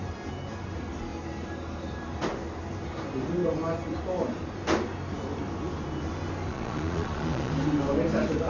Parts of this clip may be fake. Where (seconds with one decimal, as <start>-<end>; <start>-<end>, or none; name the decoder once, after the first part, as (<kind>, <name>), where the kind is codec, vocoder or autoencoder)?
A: 6.5-7.5 (vocoder, Vocos)